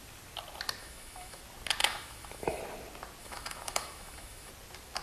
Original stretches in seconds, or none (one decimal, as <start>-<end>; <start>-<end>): 0.0-0.8; 1.4-1.8; 2.6-3.2; 4.5-5.0